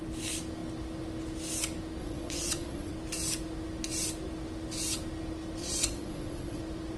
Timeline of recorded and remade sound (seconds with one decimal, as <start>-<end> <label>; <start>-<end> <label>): 0.0-2.0 recorded; 2.0-2.9 remade; 2.9-5.6 recorded; 5.6-6.6 remade; 6.6-7.0 recorded